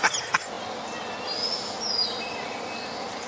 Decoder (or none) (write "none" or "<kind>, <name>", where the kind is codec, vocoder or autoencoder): none